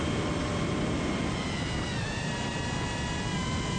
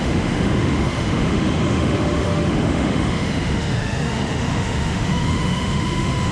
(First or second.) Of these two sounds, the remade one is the second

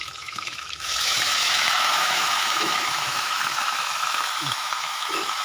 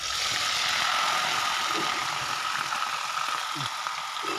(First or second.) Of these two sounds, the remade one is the first